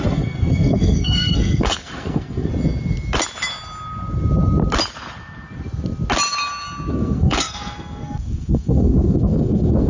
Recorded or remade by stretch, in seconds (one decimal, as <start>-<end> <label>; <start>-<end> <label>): 0.0-2.5 remade; 2.5-6.9 recorded; 6.9-9.9 remade